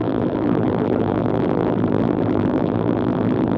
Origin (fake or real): fake